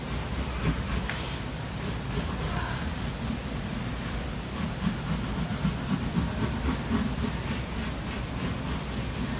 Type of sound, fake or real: real